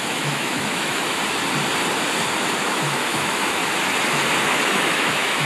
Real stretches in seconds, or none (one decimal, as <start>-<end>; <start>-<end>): 1.2-2.6; 3.6-4.4